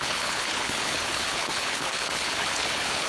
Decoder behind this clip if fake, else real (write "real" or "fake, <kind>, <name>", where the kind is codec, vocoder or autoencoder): fake, codec, HILCodec